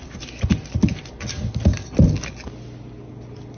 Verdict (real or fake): real